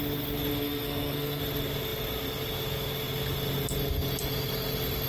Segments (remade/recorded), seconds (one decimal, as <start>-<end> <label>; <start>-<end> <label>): 0.0-0.5 recorded; 0.5-1.4 remade; 1.4-5.1 recorded

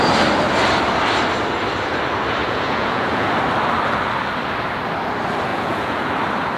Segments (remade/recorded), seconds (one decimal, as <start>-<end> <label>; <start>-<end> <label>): 0.0-2.4 recorded; 2.4-3.3 remade; 3.3-5.5 recorded; 5.5-6.1 remade; 6.1-6.6 recorded

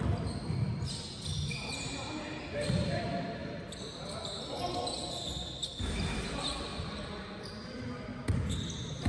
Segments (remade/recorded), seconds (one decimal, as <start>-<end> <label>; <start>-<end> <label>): 0.0-9.1 recorded

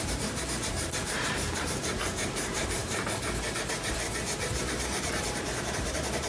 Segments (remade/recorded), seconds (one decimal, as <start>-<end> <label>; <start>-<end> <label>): 0.0-2.8 remade; 2.8-3.7 recorded; 3.7-6.3 remade